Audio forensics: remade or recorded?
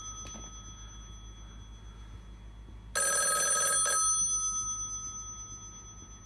recorded